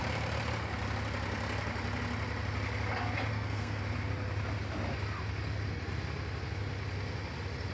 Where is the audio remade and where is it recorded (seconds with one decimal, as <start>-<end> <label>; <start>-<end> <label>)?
0.0-3.3 recorded; 3.3-3.8 remade; 3.8-7.7 recorded